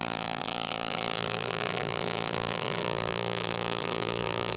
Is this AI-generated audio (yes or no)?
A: yes